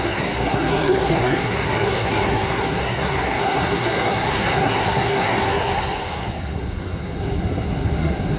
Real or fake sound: fake